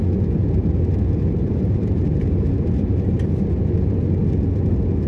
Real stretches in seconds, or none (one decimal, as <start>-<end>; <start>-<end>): 0.0-0.4; 3.5-5.1